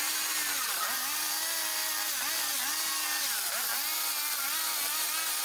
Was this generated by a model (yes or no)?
no